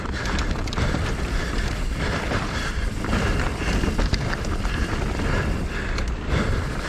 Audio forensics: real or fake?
fake